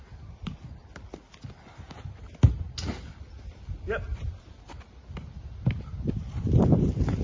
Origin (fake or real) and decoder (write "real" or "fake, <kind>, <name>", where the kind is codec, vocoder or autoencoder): real